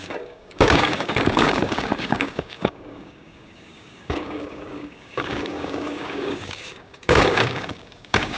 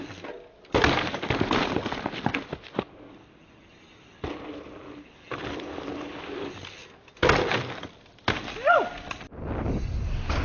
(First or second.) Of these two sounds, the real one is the second